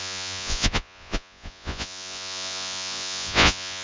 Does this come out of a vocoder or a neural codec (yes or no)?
yes